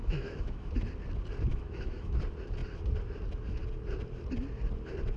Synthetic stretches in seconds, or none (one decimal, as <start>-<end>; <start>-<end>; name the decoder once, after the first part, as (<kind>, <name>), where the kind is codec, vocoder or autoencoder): 0.0-0.7 (autoencoder, DAC-VAE); 1.5-2.2